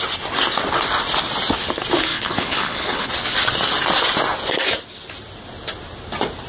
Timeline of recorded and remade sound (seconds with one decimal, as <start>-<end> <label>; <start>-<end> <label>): 0.0-2.1 recorded; 2.1-3.1 remade; 3.1-6.5 recorded